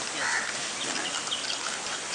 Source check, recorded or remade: recorded